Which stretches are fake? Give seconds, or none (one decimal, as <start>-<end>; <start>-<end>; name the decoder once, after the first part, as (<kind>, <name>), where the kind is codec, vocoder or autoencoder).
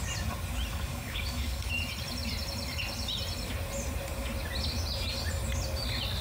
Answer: 0.7-1.7 (codec, DAC)